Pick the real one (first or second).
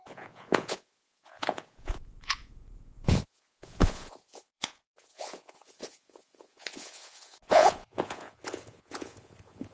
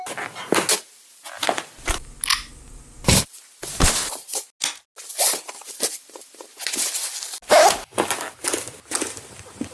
second